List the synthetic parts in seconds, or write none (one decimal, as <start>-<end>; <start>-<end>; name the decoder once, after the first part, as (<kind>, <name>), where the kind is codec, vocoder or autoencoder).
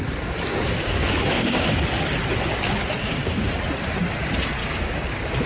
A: 0.5-1.8 (codec, DAC); 3.0-3.5; 4.6-5.5